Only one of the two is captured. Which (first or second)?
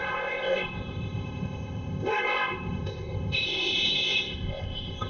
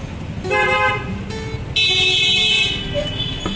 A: second